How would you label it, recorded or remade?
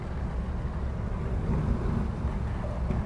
recorded